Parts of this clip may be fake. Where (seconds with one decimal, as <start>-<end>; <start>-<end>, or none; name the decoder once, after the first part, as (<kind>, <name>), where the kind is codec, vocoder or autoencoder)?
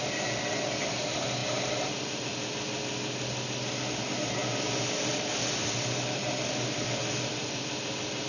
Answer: none